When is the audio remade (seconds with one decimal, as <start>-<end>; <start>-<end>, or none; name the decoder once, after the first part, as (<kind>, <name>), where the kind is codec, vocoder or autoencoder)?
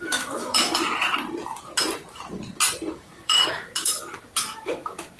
0.0-0.8 (autoencoder, DAC-VAE); 2.9-5.2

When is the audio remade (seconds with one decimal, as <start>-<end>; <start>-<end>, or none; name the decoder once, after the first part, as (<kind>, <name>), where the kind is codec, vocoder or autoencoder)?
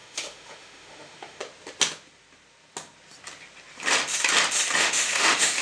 0.0-1.4 (autoencoder, DAC-VAE); 4.8-5.6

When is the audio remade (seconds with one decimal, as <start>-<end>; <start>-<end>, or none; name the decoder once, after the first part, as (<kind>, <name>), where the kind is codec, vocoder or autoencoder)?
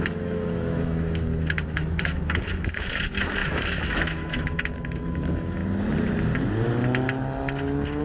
0.0-5.6 (autoencoder, DAC-VAE)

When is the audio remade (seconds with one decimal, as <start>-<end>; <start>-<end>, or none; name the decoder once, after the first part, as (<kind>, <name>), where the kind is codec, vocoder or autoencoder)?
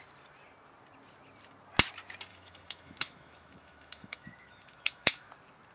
2.3-5.3 (autoencoder, DAC-VAE)